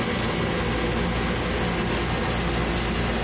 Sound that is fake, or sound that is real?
real